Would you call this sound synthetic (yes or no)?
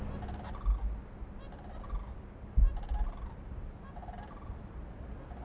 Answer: no